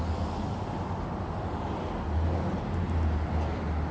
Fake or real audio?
real